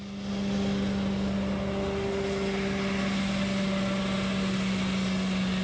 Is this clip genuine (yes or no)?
yes